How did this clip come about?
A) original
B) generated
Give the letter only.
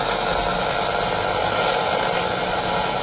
A